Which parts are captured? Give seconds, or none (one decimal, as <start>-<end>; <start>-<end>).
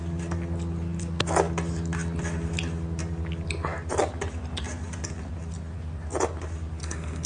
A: 0.0-6.8